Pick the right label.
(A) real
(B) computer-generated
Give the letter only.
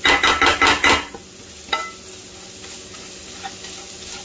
A